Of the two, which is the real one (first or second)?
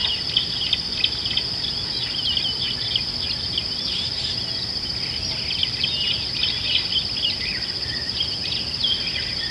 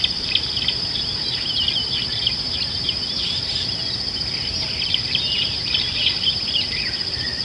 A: first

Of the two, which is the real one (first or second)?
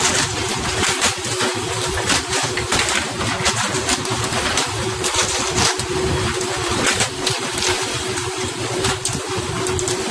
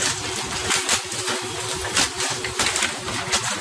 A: second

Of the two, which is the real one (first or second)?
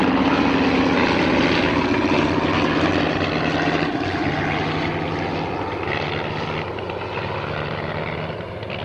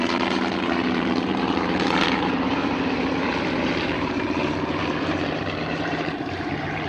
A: first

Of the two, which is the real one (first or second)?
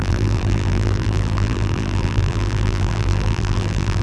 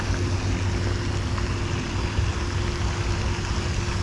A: second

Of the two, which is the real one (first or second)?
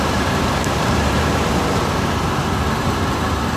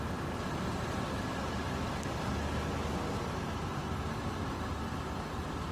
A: second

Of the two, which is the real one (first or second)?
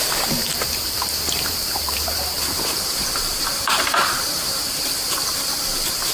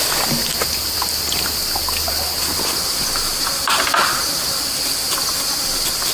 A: second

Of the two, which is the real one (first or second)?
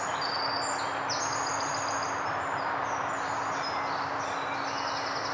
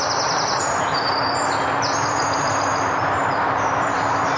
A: first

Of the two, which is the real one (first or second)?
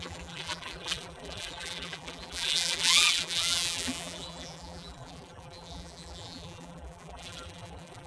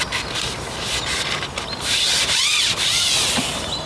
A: second